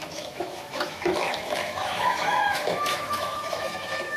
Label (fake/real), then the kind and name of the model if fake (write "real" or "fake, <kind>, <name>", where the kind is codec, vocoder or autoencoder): fake, autoencoder, DAC-VAE